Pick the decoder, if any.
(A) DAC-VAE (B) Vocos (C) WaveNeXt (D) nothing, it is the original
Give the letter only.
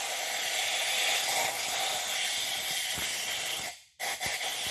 D